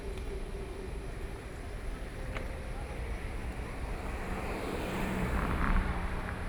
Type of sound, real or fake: fake